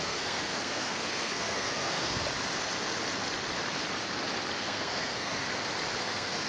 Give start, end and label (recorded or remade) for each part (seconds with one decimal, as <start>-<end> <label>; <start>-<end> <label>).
0.0-2.2 remade; 2.2-4.6 recorded; 4.6-5.4 remade; 5.4-6.0 recorded; 6.0-6.5 remade